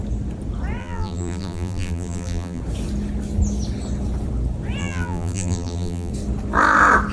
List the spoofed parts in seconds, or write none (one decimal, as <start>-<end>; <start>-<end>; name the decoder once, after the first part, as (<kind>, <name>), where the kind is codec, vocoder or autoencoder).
0.8-2.6 (vocoder, BigVGAN v2); 4.8-6.1